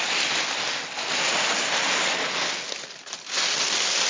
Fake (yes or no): no